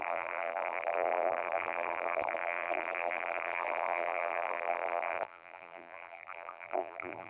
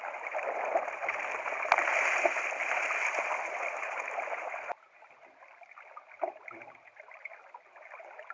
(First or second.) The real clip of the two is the second